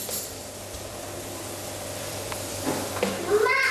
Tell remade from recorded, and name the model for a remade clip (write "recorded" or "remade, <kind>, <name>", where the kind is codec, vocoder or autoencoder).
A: remade, vocoder, BigVGAN v2